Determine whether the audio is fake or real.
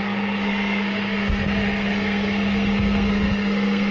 fake